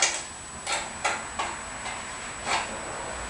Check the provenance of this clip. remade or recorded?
recorded